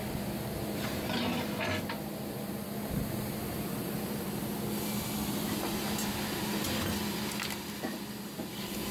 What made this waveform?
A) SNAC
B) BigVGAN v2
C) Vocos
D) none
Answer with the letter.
D